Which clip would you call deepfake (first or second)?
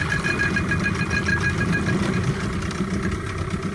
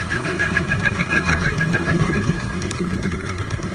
second